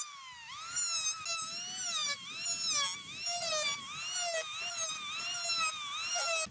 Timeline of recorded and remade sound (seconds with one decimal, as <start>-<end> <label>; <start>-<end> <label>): 0.0-6.5 recorded